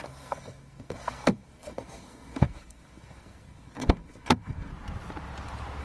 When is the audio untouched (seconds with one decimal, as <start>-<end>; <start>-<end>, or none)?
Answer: 4.7-5.8